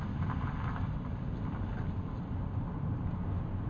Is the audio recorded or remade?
recorded